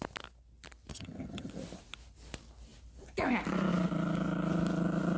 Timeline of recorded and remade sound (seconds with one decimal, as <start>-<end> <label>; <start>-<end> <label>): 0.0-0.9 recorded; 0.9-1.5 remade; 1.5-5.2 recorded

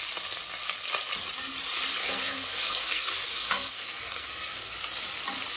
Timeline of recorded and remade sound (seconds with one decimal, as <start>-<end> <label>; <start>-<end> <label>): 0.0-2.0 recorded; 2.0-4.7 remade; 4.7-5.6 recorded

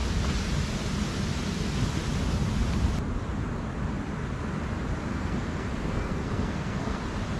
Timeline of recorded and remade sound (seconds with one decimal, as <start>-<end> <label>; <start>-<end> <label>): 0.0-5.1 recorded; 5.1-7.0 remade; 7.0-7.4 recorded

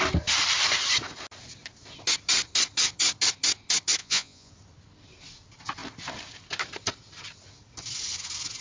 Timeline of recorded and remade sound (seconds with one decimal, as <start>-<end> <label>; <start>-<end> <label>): 0.0-4.0 recorded; 4.0-4.5 remade; 4.5-8.6 recorded

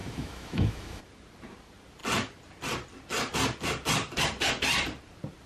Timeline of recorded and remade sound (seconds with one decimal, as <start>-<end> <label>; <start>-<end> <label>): 0.0-1.0 remade; 1.0-5.5 recorded